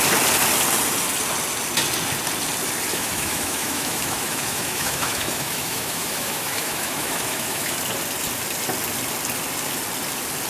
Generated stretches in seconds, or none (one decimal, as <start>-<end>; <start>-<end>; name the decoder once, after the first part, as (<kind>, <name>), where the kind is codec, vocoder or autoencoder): 2.9-7.8 (autoencoder, DAC-VAE)